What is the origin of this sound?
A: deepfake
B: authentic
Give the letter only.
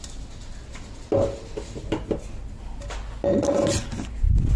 B